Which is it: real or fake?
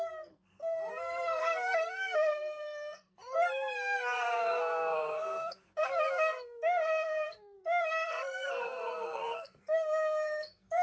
fake